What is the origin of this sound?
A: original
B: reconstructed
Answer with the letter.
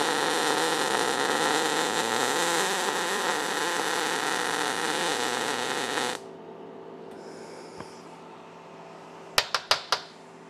A